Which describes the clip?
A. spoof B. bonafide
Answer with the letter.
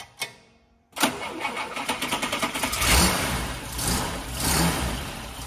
A